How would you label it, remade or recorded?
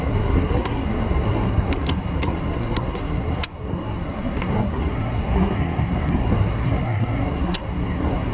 remade